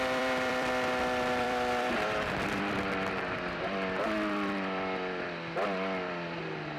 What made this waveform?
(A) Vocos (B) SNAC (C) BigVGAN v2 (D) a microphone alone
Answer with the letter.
C